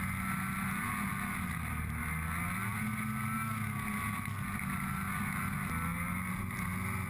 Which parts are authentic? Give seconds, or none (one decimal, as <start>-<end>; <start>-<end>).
0.0-7.1